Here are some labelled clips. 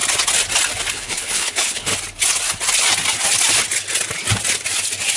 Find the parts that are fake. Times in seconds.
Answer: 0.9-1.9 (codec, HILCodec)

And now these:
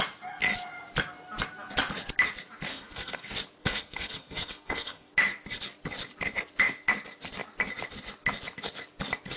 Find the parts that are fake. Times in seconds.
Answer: 2.7-3.2 (codec, SNAC); 3.6-5.1

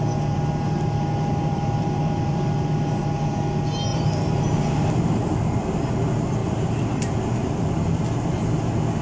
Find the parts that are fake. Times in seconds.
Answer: 1.3-3.0 (vocoder, BigVGAN v2); 3.9-4.4; 6.4-7.2

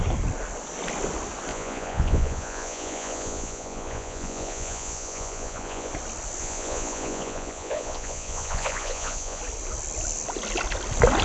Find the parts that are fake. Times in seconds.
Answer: 1.5-5.9 (vocoder, Vocos); 6.4-9.4

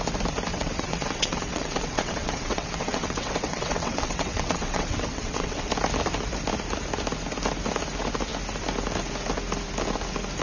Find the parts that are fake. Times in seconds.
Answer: 0.5-5.7 (vocoder, WaveNeXt)

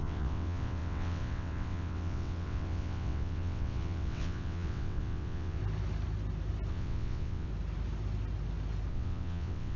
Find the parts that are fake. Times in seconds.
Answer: 0.0-5.6 (vocoder, WaveNeXt); 6.7-7.5; 8.9-9.8